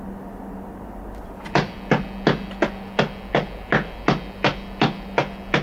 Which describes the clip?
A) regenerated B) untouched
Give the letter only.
B